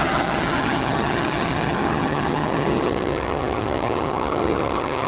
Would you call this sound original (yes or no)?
no